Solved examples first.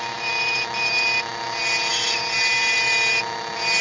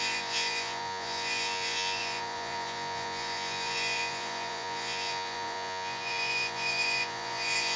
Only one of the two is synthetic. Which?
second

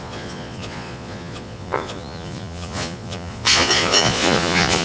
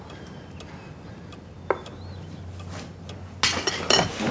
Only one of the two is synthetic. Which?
first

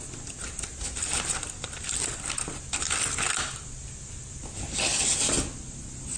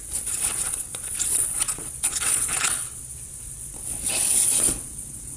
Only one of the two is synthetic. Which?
second